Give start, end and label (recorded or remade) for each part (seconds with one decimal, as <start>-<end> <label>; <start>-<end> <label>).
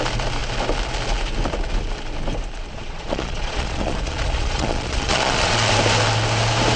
0.0-2.7 recorded; 2.7-5.7 remade; 5.7-6.8 recorded